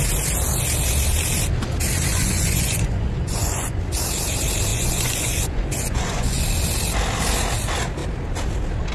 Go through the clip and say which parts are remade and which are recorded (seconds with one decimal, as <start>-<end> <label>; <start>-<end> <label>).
0.0-2.1 recorded; 2.1-3.8 remade; 3.8-4.7 recorded; 4.7-6.4 remade; 6.4-8.9 recorded